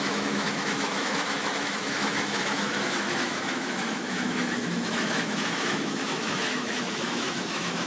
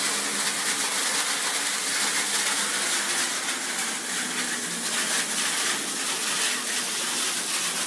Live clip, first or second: second